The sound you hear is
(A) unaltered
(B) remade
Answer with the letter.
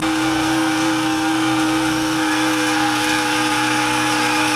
B